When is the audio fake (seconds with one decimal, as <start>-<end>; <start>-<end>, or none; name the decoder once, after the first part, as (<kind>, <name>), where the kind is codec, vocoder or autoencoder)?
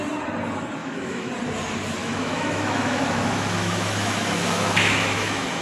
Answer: 0.8-1.3 (autoencoder, DAC-VAE); 2.0-5.6